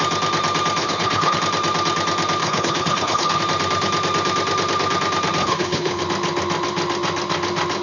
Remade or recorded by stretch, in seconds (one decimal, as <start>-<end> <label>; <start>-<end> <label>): 0.0-0.8 recorded; 0.8-1.4 remade; 1.4-2.4 recorded; 2.4-3.4 remade; 3.4-5.4 recorded; 5.4-6.0 remade; 6.0-7.8 recorded